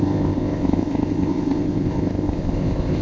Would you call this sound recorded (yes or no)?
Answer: no